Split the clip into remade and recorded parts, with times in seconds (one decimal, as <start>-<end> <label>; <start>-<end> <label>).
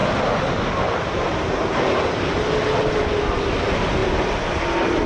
0.0-5.1 recorded